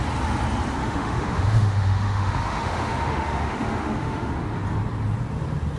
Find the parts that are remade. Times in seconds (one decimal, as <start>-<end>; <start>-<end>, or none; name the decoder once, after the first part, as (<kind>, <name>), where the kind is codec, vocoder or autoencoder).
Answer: 0.8-4.3 (autoencoder, DAC-VAE)